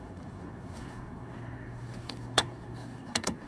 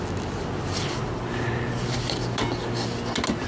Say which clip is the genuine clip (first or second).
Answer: second